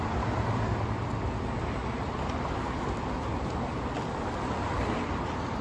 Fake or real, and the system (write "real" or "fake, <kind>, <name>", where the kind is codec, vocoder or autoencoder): fake, vocoder, BigVGAN v2